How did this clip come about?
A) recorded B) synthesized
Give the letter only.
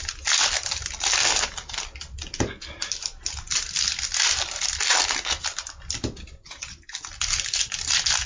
A